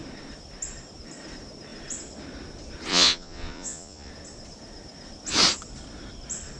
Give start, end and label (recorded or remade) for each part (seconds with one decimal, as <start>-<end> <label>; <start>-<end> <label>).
0.0-2.9 recorded; 2.9-4.1 remade; 4.1-6.6 recorded